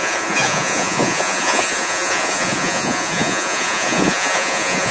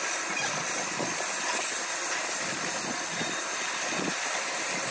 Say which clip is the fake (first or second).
first